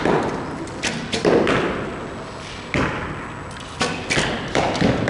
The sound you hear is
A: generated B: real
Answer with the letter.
B